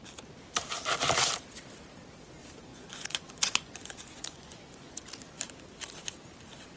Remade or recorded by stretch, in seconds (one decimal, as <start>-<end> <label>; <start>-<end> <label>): 0.0-2.7 recorded; 2.7-5.0 remade; 5.0-6.8 recorded